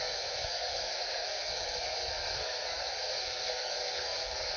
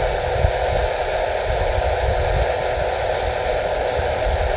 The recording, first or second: second